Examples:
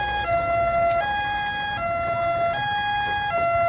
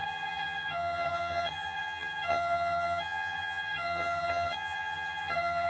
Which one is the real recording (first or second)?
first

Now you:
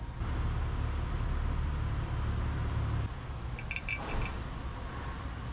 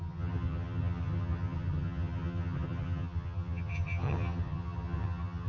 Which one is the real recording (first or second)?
first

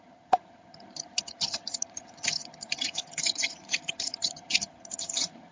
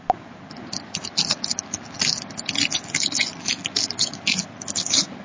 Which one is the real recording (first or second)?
second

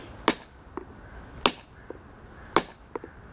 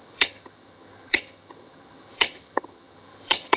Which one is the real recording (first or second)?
first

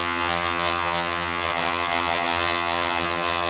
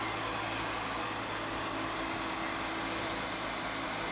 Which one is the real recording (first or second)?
second